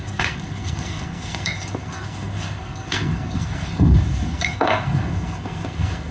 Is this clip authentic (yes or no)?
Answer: no